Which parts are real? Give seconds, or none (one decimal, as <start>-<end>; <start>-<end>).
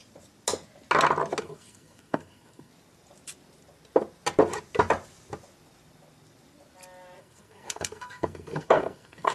0.0-1.4; 2.7-7.2